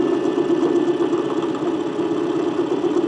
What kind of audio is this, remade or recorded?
recorded